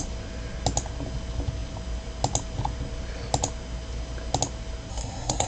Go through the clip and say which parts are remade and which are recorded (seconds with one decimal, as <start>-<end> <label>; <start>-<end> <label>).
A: 0.0-4.9 recorded; 4.9-5.5 remade